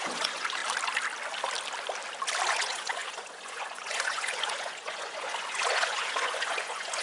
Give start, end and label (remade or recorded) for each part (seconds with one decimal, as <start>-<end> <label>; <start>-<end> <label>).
0.0-0.6 remade; 0.6-2.5 recorded; 2.5-7.0 remade